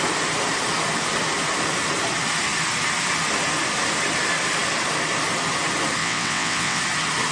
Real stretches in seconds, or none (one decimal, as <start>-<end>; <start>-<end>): 0.0-6.0; 6.8-7.3